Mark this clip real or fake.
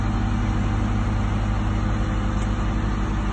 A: real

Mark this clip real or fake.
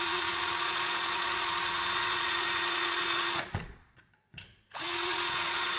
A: fake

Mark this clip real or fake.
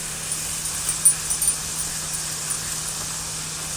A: real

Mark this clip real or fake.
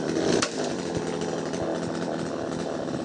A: real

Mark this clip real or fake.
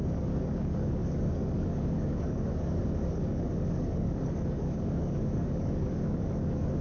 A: fake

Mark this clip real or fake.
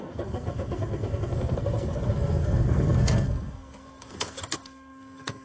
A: fake